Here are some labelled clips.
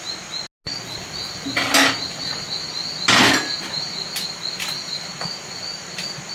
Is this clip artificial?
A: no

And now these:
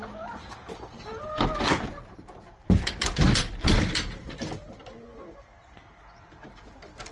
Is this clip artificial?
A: no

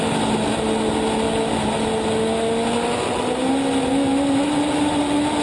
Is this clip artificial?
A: no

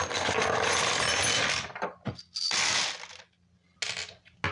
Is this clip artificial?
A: no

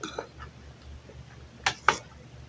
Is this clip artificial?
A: no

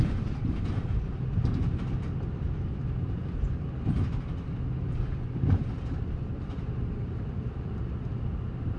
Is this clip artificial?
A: yes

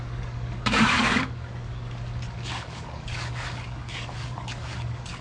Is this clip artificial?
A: yes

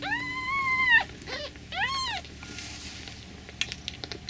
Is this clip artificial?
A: no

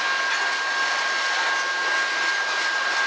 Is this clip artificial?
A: no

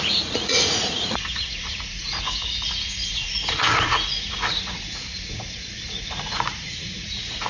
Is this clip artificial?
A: yes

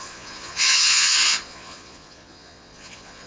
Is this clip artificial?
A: yes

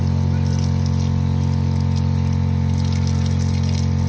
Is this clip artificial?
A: no